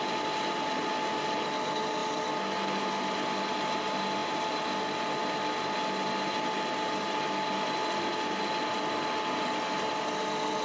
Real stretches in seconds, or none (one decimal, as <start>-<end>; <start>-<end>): 0.0-10.6